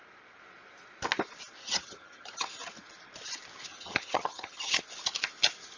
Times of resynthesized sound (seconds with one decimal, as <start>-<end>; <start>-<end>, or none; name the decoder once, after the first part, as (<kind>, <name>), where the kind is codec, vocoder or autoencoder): 1.6-2.5 (vocoder, HiFi-GAN); 3.7-4.8